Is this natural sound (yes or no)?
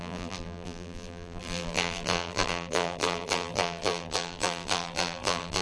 no